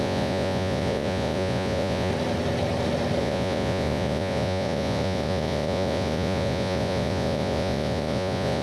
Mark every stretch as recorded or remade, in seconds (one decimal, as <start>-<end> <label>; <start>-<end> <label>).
0.0-2.1 remade; 2.1-3.2 recorded; 3.2-8.6 remade